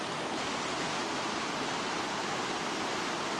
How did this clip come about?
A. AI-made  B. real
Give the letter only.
B